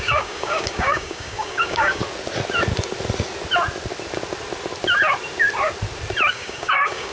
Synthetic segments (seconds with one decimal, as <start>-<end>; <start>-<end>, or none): 0.0-2.0; 6.3-7.1